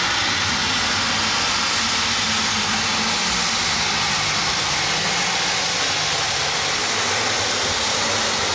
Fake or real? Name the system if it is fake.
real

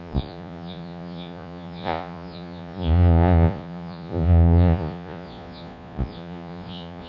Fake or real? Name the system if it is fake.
fake, vocoder, Vocos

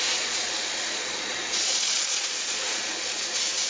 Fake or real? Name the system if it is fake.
fake, vocoder, Vocos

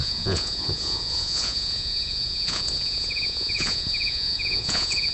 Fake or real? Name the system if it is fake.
fake, vocoder, Vocos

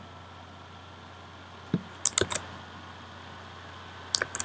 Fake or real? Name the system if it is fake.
real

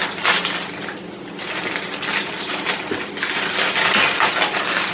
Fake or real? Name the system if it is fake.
real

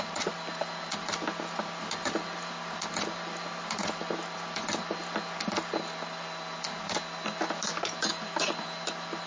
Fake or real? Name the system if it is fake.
real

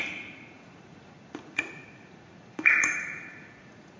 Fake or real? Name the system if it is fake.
fake, vocoder, Vocos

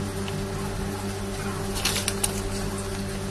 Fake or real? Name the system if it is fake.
real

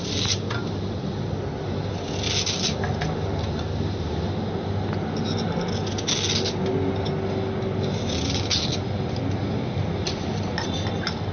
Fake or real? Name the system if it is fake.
real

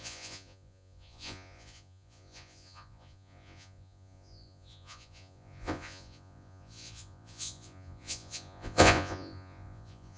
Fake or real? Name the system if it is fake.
fake, vocoder, Vocos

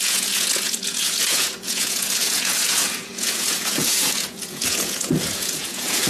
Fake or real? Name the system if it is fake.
fake, vocoder, Vocos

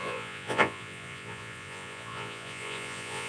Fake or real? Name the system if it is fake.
fake, vocoder, Vocos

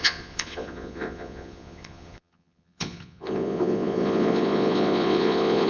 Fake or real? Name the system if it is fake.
fake, vocoder, Vocos